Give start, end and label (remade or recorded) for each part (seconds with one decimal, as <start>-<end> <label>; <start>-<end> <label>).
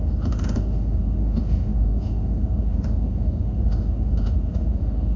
0.0-5.2 remade